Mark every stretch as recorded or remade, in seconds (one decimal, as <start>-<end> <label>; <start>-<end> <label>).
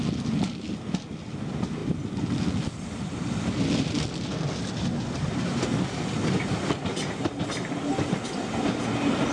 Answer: 0.0-9.3 recorded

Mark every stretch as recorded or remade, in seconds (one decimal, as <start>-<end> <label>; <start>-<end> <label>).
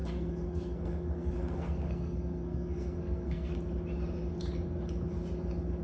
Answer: 0.0-3.5 remade; 3.5-5.8 recorded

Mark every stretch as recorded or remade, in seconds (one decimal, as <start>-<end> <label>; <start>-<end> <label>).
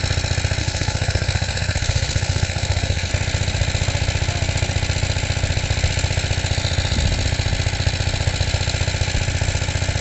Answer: 0.0-0.6 recorded; 0.6-3.1 remade; 3.1-10.0 recorded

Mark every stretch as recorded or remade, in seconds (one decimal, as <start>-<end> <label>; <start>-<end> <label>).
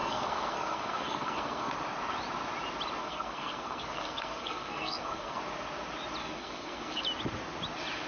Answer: 0.0-1.7 remade; 1.7-3.0 recorded; 3.0-5.4 remade; 5.4-6.2 recorded; 6.2-7.0 remade; 7.0-8.1 recorded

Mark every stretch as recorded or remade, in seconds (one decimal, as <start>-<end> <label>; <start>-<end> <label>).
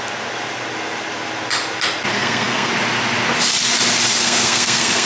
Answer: 0.0-2.1 recorded; 2.1-2.7 remade; 2.7-4.2 recorded; 4.2-5.1 remade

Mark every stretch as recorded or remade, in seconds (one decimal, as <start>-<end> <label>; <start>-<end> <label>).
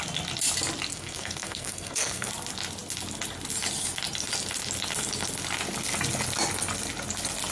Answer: 0.0-0.9 recorded; 0.9-2.3 remade; 2.3-7.5 recorded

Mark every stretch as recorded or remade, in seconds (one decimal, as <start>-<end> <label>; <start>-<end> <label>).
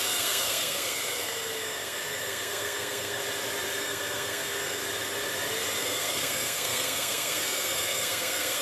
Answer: 0.0-3.2 remade; 3.2-3.8 recorded; 3.8-4.8 remade; 4.8-5.8 recorded; 5.8-8.6 remade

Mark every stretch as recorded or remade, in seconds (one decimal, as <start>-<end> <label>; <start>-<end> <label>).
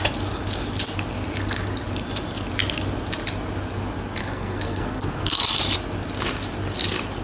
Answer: 0.0-4.2 recorded; 4.2-5.5 remade; 5.5-7.2 recorded